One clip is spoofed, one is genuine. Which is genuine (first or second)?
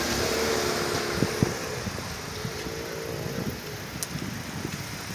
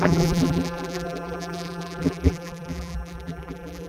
first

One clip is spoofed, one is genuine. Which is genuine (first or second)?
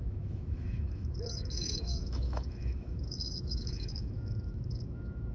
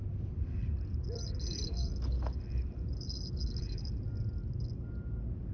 second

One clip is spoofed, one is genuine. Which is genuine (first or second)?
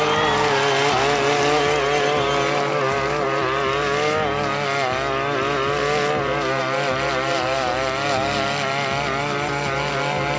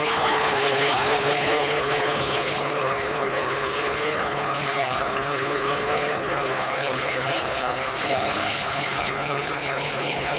first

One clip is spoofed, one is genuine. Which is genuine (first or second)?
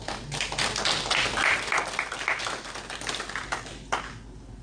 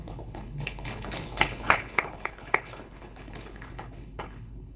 first